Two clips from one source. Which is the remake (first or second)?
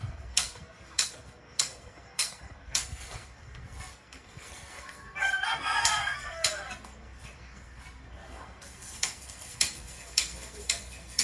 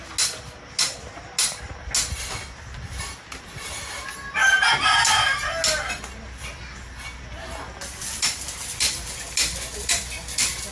first